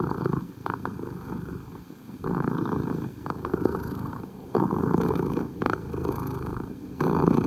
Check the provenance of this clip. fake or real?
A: fake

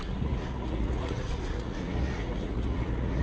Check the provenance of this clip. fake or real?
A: fake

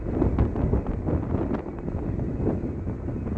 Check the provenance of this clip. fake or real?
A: real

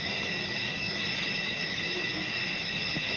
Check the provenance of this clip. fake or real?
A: fake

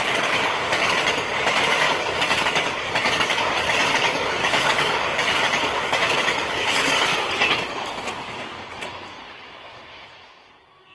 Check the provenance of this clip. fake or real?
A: fake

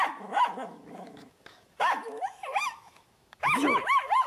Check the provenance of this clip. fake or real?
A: fake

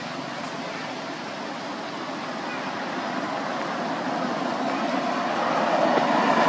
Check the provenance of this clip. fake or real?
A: real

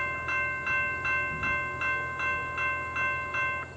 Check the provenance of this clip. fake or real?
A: real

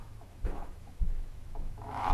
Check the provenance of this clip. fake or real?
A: fake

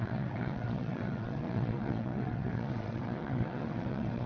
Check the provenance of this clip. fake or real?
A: fake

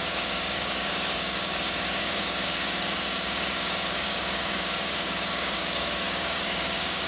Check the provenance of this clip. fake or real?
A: fake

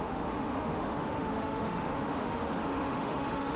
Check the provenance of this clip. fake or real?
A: fake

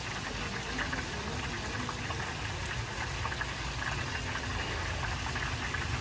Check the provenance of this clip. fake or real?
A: real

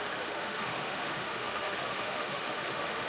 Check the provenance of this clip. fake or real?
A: fake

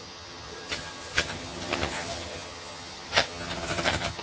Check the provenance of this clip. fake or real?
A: fake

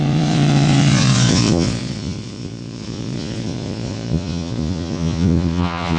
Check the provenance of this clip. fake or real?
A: fake